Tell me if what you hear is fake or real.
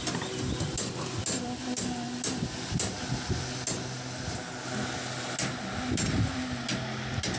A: real